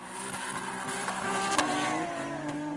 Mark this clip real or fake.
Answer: real